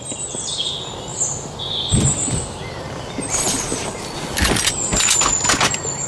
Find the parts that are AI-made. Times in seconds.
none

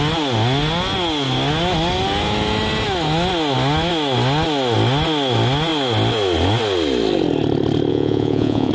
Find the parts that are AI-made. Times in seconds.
7.9-8.7 (vocoder, Vocos)

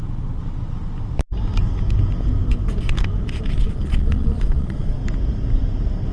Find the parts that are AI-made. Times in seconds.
3.7-5.0 (vocoder, Vocos)

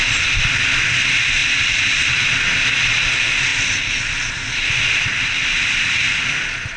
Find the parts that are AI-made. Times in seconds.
none

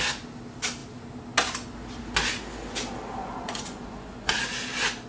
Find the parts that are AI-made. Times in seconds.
3.2-4.3 (vocoder, Vocos)

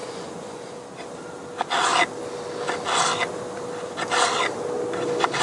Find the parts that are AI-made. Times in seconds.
0.0-0.7 (vocoder, Vocos)

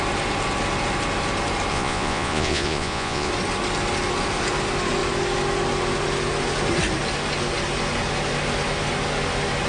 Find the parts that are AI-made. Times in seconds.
1.7-3.3 (vocoder, Vocos)